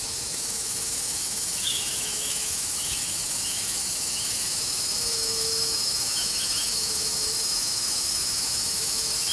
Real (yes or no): no